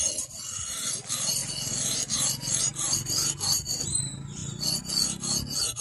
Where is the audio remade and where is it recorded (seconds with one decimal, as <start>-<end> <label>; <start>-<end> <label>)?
0.0-5.8 recorded